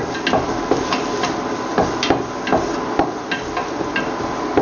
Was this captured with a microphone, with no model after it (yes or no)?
yes